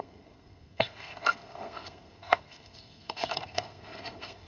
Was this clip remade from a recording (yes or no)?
yes